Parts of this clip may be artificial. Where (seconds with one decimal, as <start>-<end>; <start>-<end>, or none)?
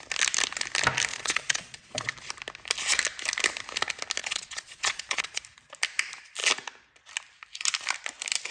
1.1-2.1; 4.2-5.4